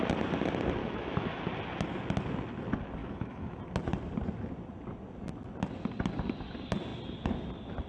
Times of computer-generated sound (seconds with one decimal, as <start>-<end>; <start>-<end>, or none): 0.8-1.4; 3.0-3.6